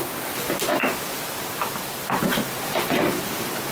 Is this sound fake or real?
real